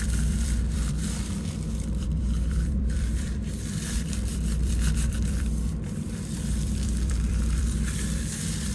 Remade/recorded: remade